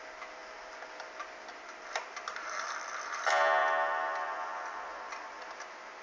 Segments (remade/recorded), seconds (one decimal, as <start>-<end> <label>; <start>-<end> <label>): 0.0-6.0 recorded